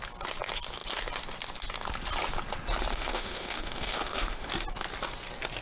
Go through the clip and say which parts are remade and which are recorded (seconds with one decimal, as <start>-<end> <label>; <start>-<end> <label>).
0.0-2.9 recorded; 2.9-4.5 remade; 4.5-5.6 recorded